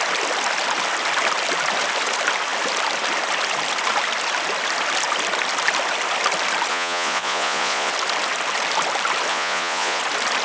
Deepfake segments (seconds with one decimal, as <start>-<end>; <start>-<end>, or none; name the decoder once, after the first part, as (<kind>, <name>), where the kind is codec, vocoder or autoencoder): 6.7-7.9 (vocoder, Vocos); 9.3-10.0